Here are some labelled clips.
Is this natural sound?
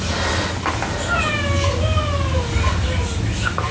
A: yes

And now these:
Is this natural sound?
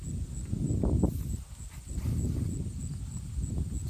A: yes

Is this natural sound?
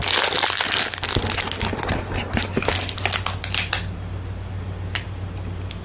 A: yes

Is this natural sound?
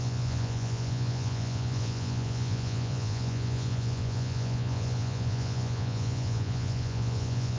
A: no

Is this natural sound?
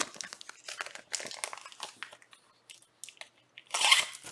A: yes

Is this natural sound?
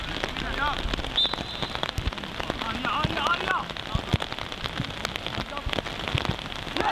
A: yes